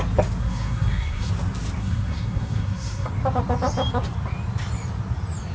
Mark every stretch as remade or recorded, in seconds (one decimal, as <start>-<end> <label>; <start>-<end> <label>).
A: 0.0-0.4 recorded; 0.4-1.3 remade; 1.3-1.8 recorded; 1.8-3.1 remade; 3.1-5.5 recorded